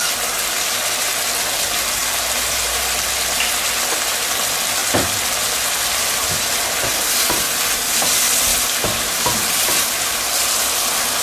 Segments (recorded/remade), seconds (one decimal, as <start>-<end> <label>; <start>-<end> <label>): 0.0-2.0 recorded; 2.0-2.8 remade; 2.8-11.2 recorded